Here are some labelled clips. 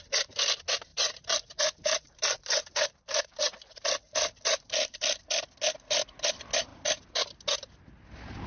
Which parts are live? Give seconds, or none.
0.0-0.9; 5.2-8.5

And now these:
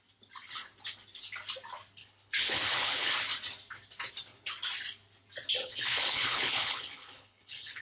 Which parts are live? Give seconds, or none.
0.0-2.0; 3.1-5.6

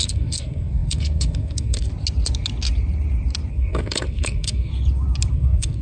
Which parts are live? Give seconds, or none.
1.9-3.5; 4.7-5.3

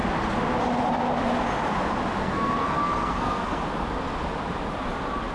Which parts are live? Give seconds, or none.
0.0-2.2; 3.6-5.3

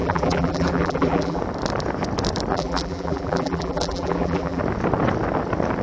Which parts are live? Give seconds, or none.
1.4-2.5; 4.6-5.8